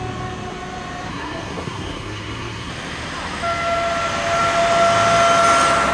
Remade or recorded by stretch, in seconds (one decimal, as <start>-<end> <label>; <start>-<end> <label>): 0.0-1.1 recorded; 1.1-2.7 remade; 2.7-5.9 recorded